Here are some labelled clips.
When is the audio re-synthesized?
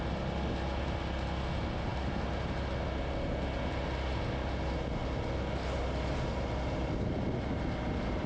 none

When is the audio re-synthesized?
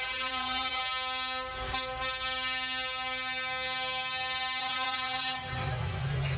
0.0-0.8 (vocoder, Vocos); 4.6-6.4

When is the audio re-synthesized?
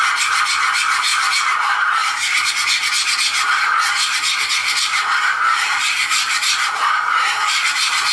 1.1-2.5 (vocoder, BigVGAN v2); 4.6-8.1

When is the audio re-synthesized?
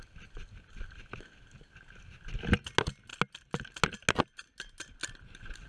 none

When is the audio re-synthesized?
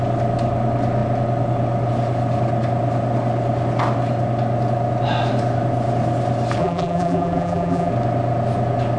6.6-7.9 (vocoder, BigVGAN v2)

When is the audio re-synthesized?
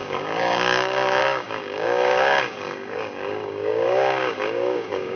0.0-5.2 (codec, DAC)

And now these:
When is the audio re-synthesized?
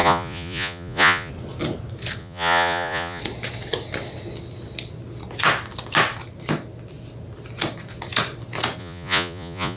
0.0-1.3 (vocoder, Vocos); 2.2-3.2; 8.8-9.8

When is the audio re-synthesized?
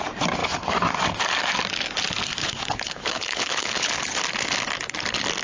2.4-3.9 (codec, HILCodec)